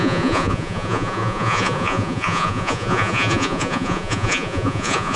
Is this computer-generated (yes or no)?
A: yes